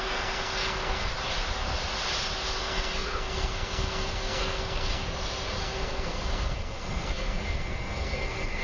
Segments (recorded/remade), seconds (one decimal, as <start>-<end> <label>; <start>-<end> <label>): 0.0-1.1 remade; 1.1-2.6 recorded; 2.6-5.0 remade; 5.0-5.6 recorded; 5.6-8.6 remade